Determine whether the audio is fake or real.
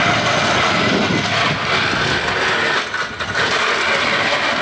real